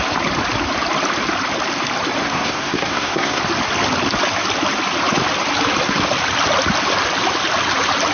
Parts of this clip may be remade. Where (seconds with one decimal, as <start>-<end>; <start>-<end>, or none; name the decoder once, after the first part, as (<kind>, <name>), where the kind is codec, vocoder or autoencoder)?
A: 2.2-3.4 (codec, SNAC)